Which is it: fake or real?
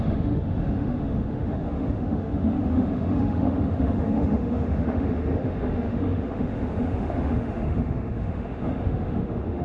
fake